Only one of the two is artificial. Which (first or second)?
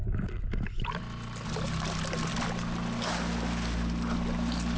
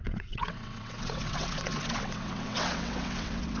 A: second